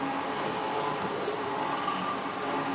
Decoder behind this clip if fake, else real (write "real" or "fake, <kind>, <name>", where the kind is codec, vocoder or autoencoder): real